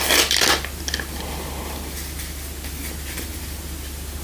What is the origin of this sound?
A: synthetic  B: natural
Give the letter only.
B